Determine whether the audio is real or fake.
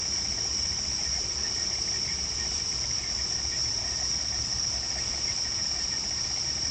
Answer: fake